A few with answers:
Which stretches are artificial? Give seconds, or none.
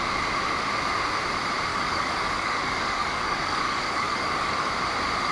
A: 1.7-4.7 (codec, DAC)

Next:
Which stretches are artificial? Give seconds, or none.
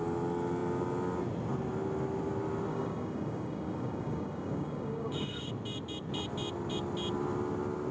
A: 2.7-5.5 (codec, DAC)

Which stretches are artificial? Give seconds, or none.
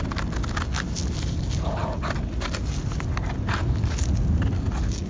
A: none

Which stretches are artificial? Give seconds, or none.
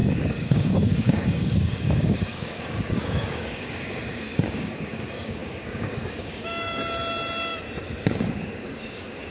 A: 0.0-6.8 (codec, DAC); 8.3-9.3